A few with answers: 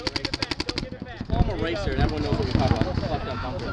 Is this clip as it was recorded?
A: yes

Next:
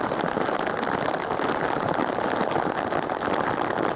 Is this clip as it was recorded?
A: yes